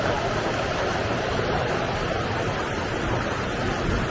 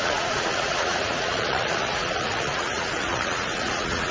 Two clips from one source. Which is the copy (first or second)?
second